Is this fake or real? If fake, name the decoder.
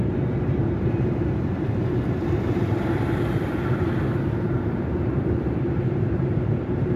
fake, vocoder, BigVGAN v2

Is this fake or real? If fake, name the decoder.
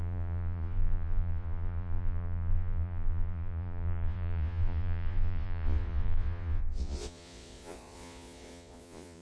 fake, vocoder, Vocos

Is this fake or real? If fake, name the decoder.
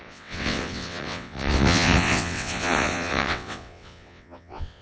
fake, vocoder, WaveNeXt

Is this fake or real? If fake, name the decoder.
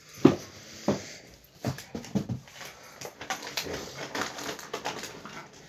real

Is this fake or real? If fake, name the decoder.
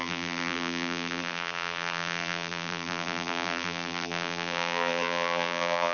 fake, vocoder, BigVGAN v2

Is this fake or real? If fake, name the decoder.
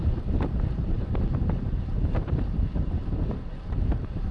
fake, vocoder, BigVGAN v2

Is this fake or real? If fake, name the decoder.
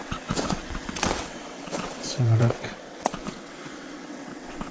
fake, vocoder, WaveNeXt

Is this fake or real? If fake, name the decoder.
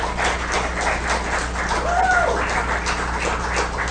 real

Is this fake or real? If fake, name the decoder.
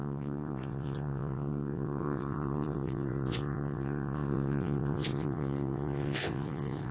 fake, vocoder, WaveNeXt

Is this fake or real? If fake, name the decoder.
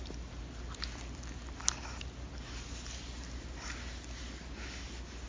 real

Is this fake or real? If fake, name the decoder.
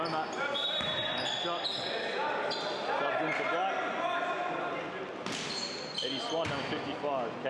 real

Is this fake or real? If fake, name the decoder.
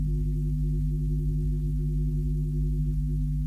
real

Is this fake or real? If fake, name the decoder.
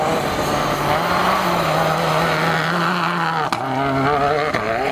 real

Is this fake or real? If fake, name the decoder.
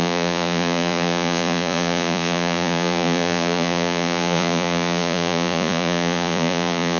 fake, vocoder, Vocos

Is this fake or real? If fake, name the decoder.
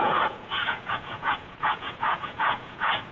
fake, vocoder, Vocos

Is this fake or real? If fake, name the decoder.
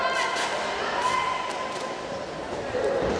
real